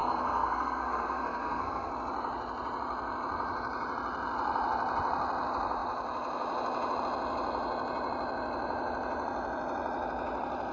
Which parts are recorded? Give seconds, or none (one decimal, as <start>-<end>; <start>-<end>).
1.9-10.7